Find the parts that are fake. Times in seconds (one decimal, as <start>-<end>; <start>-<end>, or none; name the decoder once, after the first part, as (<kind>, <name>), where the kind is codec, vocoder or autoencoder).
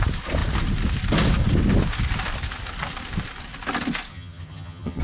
4.1-5.0 (vocoder, HiFi-GAN)